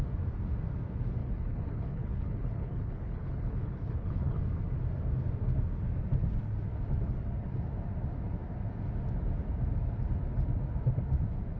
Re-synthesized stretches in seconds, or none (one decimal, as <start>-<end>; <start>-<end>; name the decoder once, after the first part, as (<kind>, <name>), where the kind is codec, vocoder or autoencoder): 1.2-4.4 (codec, HILCodec)